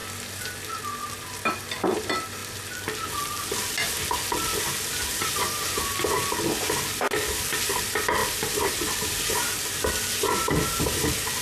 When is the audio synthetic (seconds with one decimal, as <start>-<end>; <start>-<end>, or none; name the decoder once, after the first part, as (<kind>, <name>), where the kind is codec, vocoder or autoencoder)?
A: 8.2-8.7 (vocoder, BigVGAN v2)